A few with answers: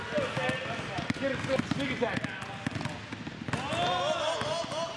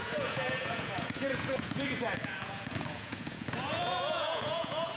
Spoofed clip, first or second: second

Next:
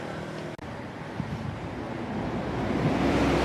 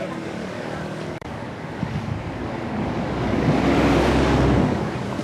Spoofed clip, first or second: second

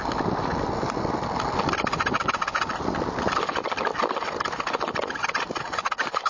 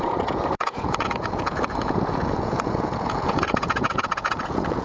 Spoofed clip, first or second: second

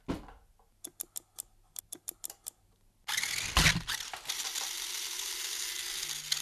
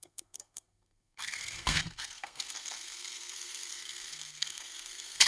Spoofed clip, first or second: second